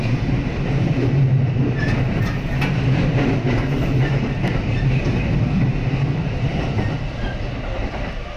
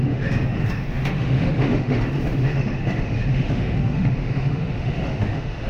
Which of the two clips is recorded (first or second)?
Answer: first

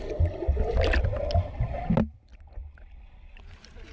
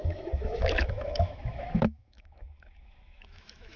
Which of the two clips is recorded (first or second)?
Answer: first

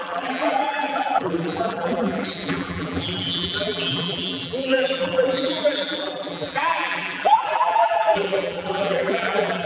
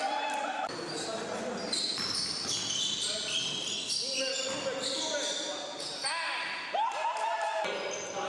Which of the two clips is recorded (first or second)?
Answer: second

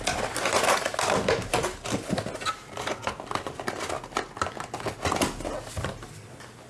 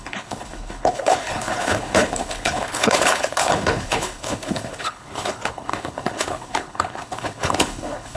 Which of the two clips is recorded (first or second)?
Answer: first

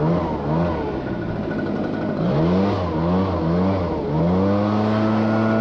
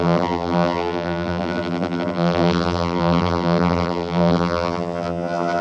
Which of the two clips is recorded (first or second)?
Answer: first